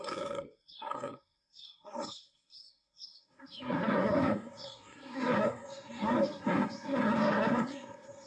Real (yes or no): no